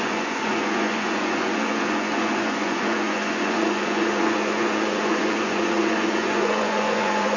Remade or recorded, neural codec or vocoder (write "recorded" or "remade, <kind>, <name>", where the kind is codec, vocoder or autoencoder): remade, vocoder, Vocos